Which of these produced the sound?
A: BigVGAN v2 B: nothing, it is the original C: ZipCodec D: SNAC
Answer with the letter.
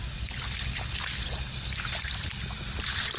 B